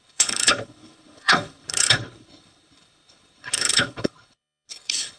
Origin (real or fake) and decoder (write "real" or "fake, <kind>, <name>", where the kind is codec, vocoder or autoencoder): fake, codec, HILCodec